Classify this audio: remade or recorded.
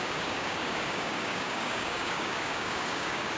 remade